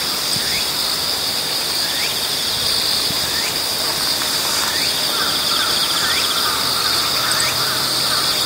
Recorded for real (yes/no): yes